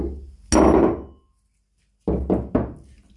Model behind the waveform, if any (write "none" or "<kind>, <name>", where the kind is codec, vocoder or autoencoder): none